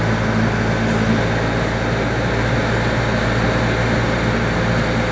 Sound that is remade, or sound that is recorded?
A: recorded